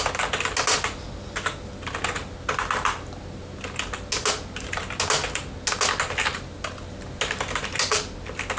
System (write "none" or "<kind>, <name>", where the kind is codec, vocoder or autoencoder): none